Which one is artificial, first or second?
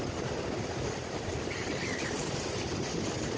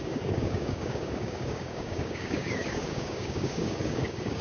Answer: second